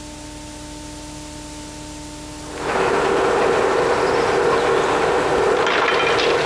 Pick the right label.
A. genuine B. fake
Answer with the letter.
A